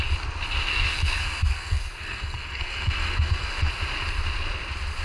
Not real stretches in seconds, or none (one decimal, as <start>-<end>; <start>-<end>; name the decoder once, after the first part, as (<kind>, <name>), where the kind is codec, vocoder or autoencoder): 0.7-3.7 (codec, SNAC)